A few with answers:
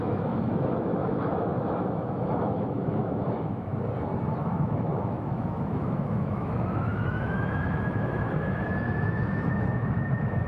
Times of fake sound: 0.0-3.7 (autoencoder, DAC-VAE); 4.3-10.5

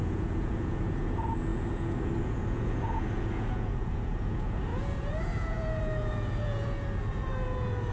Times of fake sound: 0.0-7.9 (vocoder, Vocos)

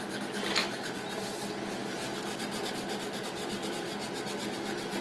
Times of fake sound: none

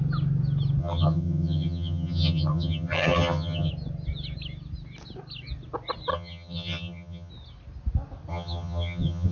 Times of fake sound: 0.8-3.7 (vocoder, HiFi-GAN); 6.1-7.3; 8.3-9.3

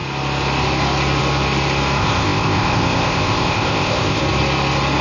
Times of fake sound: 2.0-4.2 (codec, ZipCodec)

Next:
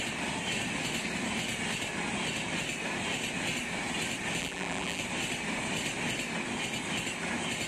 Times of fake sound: 4.4-5.0 (vocoder, BigVGAN v2)